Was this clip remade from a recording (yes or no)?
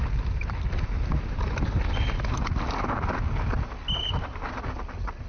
no